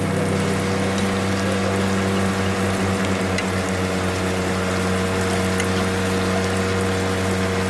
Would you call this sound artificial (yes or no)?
no